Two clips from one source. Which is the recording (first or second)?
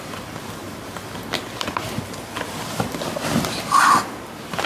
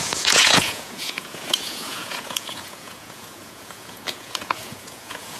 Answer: first